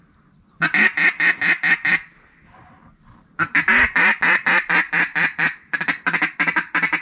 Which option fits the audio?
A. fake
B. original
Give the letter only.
B